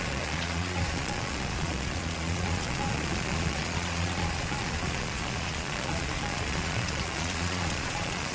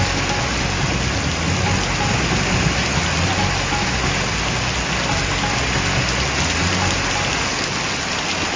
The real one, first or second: second